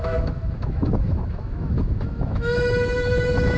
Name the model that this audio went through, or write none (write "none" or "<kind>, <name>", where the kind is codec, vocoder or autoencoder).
autoencoder, DAC-VAE